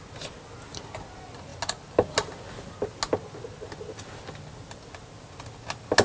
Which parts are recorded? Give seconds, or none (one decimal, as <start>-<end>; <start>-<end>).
0.0-6.0